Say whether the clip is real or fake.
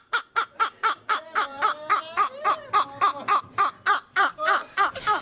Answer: fake